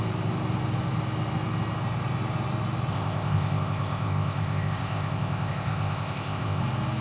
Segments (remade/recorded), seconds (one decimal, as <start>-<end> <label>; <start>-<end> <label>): 0.0-2.9 recorded; 2.9-6.6 remade; 6.6-7.0 recorded